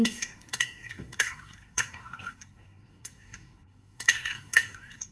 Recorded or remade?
remade